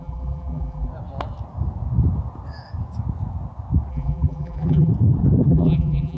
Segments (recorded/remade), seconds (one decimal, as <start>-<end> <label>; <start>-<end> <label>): 0.0-0.9 remade; 0.9-3.9 recorded; 3.9-4.9 remade; 4.9-5.5 recorded; 5.5-6.2 remade